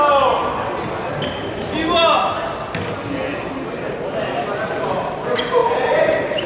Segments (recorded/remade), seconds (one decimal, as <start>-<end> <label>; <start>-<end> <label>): 0.0-4.6 recorded; 4.6-5.1 remade; 5.1-5.6 recorded; 5.6-6.5 remade

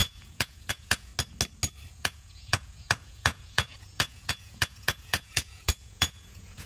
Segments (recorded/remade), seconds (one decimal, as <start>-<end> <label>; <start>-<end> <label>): 0.0-1.1 remade; 1.1-1.9 recorded; 1.9-6.7 remade

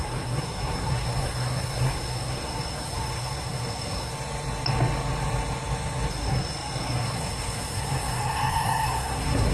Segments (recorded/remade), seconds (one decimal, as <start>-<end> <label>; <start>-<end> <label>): 0.0-4.1 remade; 4.1-6.1 recorded; 6.1-9.5 remade

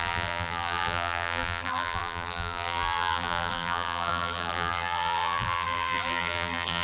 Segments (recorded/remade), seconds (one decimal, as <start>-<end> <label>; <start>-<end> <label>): 0.0-6.8 remade

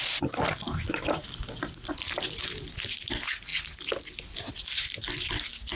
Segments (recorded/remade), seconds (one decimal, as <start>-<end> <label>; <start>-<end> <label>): 0.0-5.7 recorded

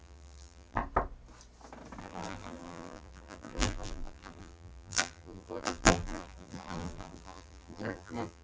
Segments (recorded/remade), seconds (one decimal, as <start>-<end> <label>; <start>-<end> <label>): 0.0-0.8 remade; 0.8-2.0 recorded; 2.0-8.4 remade

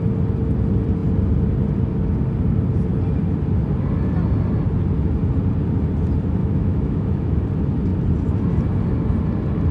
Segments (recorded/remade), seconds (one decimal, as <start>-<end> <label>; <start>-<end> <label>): 0.0-6.4 recorded; 6.4-7.4 remade; 7.4-9.7 recorded

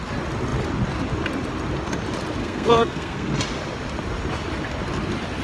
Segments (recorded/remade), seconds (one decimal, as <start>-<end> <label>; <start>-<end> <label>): 0.0-2.4 recorded; 2.4-3.3 remade; 3.3-5.4 recorded